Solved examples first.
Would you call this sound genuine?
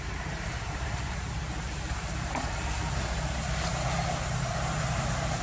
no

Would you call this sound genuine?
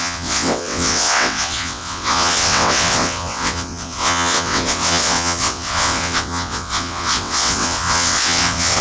no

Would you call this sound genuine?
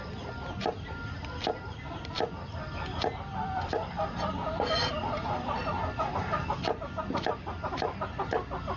yes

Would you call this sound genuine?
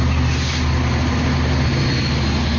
yes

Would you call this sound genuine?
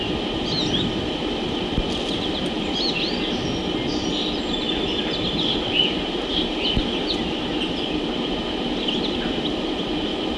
yes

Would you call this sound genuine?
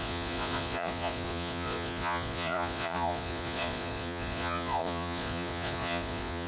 no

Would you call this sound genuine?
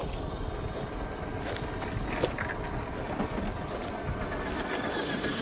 yes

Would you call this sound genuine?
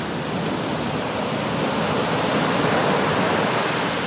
yes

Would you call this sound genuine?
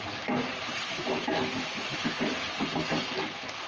yes